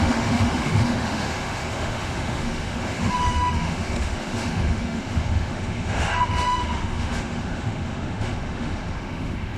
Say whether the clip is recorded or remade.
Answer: remade